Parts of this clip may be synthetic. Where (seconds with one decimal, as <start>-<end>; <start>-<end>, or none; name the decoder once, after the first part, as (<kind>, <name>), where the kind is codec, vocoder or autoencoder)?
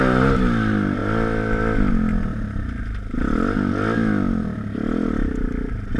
none